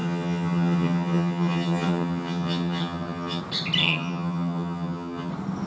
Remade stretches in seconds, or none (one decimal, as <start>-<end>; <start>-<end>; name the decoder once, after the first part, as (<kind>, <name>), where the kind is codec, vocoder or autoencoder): 0.0-3.4 (vocoder, HiFi-GAN); 3.8-5.3